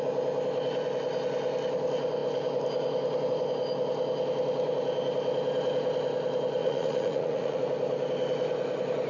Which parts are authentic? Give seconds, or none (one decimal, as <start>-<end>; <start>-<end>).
0.0-6.6; 7.6-9.1

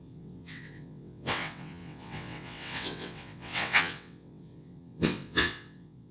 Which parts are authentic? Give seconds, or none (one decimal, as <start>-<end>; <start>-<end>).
none